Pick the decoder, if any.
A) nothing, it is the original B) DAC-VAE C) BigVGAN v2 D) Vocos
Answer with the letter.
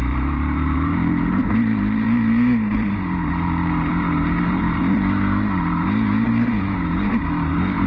C